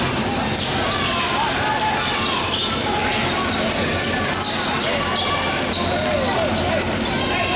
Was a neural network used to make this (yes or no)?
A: no